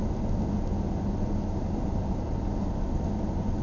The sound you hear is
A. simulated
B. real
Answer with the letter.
B